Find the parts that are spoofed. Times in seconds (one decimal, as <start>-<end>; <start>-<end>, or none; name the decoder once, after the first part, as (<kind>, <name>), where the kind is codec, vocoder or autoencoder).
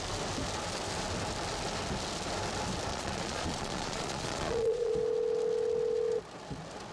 2.9-4.9 (vocoder, Vocos)